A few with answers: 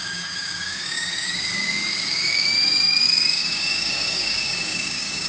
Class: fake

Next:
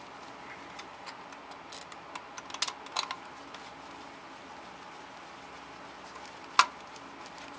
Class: real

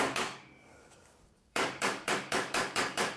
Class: fake